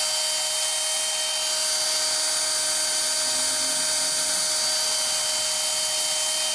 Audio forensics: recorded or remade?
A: recorded